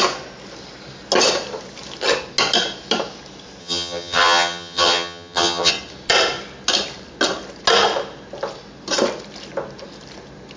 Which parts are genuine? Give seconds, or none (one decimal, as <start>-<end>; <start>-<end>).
0.0-3.6; 5.7-10.6